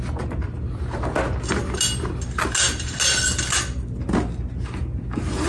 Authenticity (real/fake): real